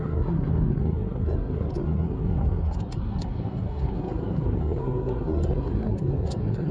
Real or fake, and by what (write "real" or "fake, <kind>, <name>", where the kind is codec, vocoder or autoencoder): fake, codec, SNAC